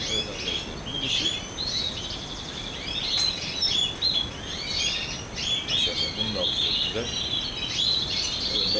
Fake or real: real